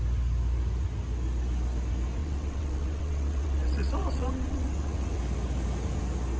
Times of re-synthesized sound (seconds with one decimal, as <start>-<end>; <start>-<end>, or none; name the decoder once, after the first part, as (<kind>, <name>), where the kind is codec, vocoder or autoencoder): 2.2-5.2 (vocoder, WaveNeXt)